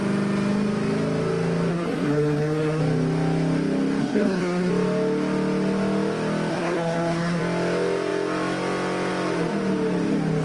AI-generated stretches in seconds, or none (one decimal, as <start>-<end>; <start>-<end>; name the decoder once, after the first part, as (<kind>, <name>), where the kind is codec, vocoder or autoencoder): 1.7-2.8 (codec, SNAC); 4.0-4.7; 6.5-7.4